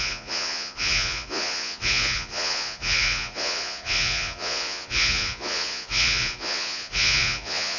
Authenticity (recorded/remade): remade